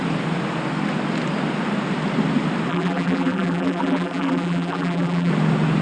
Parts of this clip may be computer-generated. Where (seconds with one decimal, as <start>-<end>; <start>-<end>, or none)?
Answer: 2.7-5.3